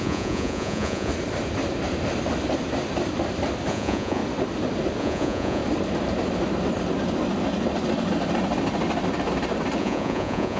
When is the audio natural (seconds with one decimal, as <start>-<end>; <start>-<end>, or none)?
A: 1.1-3.7; 4.2-5.0; 5.6-9.8